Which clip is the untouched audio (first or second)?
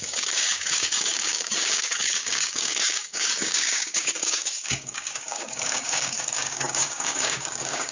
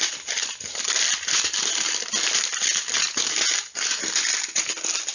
second